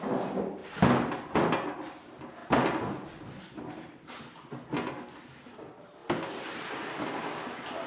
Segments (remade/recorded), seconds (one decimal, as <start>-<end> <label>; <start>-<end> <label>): 0.0-7.9 recorded